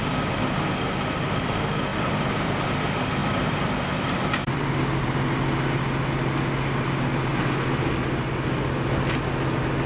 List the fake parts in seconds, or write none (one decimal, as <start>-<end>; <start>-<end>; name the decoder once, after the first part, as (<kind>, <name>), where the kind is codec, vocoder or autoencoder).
1.9-2.7 (vocoder, BigVGAN v2); 3.2-5.2